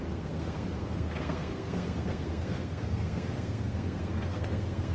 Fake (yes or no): yes